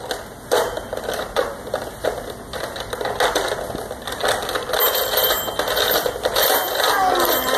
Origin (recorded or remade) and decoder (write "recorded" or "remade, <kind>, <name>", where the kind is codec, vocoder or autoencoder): recorded